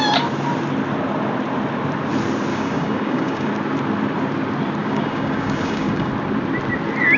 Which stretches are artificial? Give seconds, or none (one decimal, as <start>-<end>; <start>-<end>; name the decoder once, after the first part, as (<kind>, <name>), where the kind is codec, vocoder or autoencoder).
2.5-3.5 (codec, DAC); 4.8-6.1